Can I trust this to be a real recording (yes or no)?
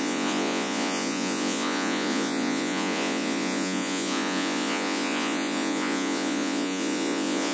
no